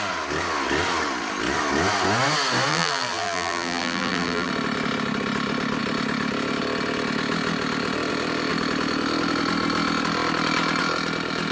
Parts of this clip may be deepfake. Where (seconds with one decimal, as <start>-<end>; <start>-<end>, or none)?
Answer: 2.7-4.5